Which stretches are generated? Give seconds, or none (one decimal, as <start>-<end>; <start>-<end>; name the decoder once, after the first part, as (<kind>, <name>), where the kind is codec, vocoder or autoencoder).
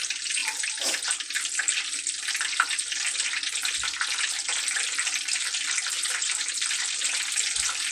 none